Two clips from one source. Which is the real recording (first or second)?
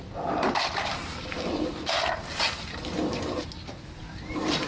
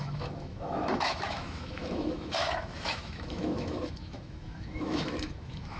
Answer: first